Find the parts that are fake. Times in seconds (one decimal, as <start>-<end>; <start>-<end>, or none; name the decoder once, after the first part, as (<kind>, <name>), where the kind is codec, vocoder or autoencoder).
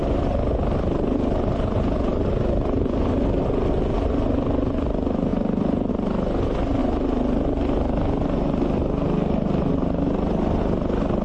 5.3-5.9 (vocoder, BigVGAN v2)